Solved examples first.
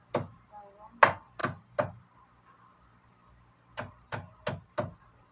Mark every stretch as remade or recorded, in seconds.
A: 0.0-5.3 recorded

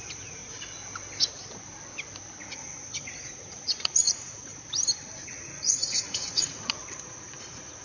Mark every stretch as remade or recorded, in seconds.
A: 0.0-0.4 remade; 0.4-2.4 recorded; 2.4-4.5 remade; 4.5-5.2 recorded; 5.2-7.8 remade

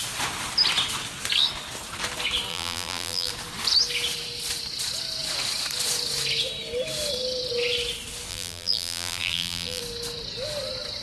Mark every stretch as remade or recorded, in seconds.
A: 0.0-2.5 recorded; 2.5-3.3 remade; 3.3-8.3 recorded; 8.3-9.8 remade; 9.8-11.0 recorded

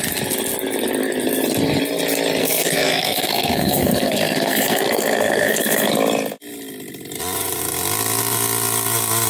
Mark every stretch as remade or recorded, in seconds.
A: 0.0-2.4 recorded; 2.4-5.9 remade; 5.9-9.3 recorded